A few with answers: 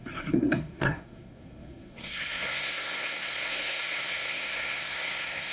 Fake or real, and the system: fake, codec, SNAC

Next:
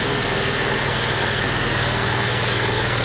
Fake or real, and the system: fake, codec, SNAC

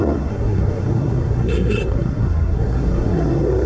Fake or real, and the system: fake, codec, SNAC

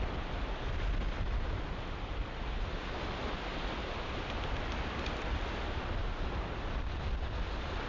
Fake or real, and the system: real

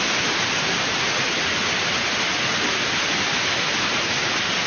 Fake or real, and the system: real